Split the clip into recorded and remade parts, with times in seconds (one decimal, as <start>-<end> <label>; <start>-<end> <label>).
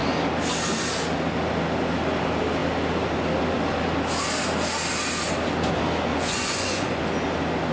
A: 0.0-6.1 recorded; 6.1-7.0 remade; 7.0-7.7 recorded